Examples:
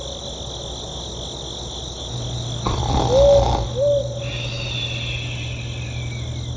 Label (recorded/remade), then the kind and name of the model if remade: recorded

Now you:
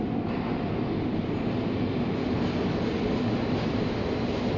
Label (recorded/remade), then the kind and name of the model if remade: recorded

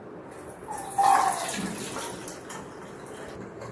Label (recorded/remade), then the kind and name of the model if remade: recorded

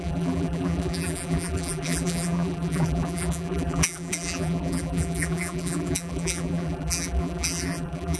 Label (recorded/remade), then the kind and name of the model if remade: remade, vocoder, BigVGAN v2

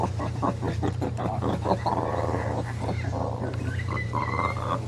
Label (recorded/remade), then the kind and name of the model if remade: remade, vocoder, BigVGAN v2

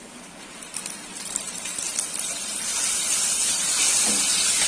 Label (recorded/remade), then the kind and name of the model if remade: recorded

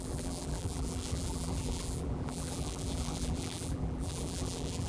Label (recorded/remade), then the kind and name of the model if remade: remade, vocoder, BigVGAN v2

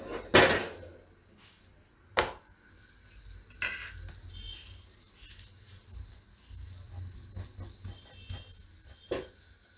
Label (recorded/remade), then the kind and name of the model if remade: recorded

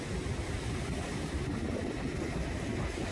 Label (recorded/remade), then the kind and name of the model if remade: recorded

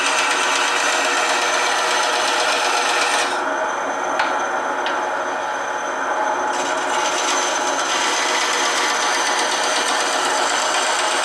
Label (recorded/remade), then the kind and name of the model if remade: recorded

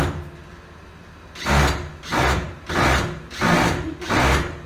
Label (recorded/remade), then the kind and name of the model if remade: recorded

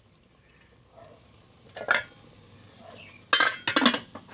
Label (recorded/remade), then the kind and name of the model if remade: recorded